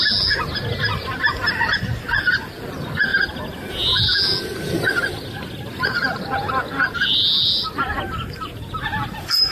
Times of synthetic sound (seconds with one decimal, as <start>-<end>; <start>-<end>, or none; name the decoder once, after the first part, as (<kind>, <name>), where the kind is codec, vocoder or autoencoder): none